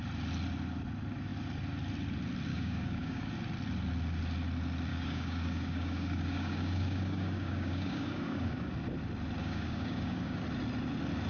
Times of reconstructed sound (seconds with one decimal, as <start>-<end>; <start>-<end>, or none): 2.5-3.3; 4.9-8.7; 9.4-10.4